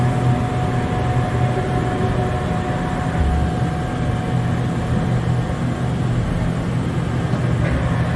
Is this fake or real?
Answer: real